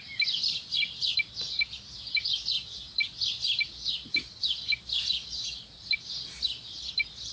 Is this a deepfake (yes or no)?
no